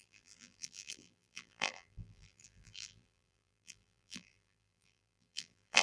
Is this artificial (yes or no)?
yes